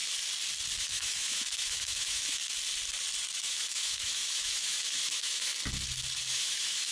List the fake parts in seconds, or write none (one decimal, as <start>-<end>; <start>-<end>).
0.8-2.4; 3.4-5.5; 6.3-6.9